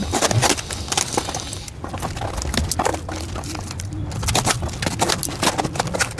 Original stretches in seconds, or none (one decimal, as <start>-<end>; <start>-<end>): 0.0-6.2